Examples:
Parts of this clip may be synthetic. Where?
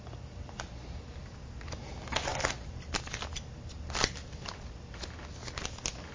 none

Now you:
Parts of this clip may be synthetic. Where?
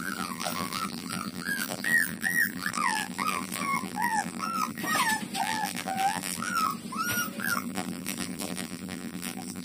0.0-4.8 (vocoder, BigVGAN v2); 5.4-6.7; 7.4-9.6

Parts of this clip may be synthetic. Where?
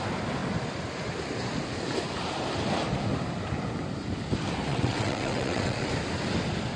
4.7-5.9 (vocoder, WaveNeXt)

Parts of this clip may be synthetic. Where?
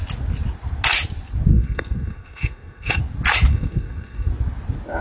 1.5-3.0 (codec, SNAC); 3.5-4.3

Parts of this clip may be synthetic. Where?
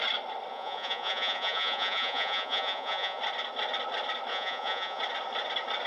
0.5-3.2 (vocoder, Vocos); 4.3-5.0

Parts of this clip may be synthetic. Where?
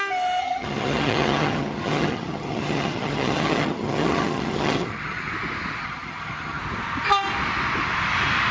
0.4-5.3 (vocoder, HiFi-GAN); 5.8-6.6